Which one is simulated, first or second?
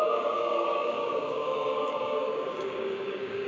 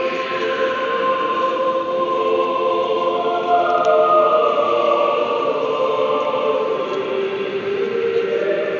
first